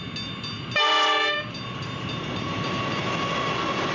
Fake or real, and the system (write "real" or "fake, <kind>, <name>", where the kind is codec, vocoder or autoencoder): real